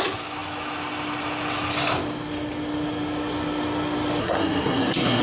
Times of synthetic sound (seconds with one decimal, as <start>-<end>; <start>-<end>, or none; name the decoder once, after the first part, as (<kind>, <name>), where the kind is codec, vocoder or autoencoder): 4.2-5.2 (codec, SNAC)